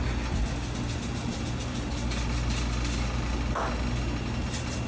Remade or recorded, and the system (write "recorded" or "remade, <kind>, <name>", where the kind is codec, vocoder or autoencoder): recorded